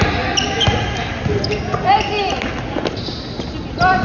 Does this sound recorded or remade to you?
recorded